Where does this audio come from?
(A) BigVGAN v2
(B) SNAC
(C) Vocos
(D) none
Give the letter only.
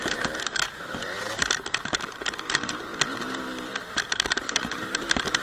A